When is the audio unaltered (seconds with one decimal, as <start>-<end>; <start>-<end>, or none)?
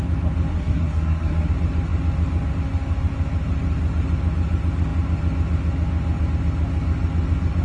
0.0-0.5; 1.5-7.6